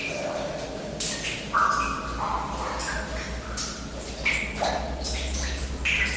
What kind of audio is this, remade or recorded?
recorded